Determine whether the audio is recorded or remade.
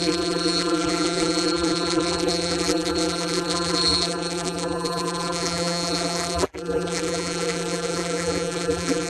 remade